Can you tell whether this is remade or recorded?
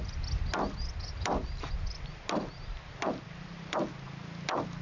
recorded